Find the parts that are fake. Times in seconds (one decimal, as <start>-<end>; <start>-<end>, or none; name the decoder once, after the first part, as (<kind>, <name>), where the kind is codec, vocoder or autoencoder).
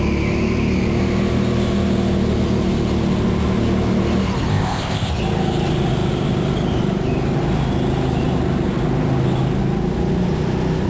4.5-5.1 (codec, ZipCodec)